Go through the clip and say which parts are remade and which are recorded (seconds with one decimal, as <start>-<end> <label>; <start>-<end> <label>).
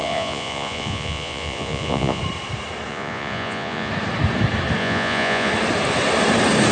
0.0-2.2 remade; 2.2-2.9 recorded; 2.9-3.9 remade; 3.9-4.8 recorded; 4.8-5.5 remade; 5.5-6.7 recorded